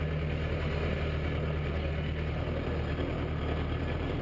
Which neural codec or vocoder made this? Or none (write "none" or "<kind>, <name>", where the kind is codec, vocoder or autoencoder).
none